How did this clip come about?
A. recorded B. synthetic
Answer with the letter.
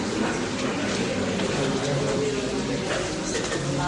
A